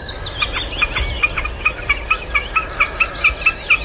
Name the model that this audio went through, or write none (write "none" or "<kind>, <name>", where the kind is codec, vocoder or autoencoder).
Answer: none